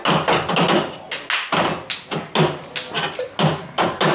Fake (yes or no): no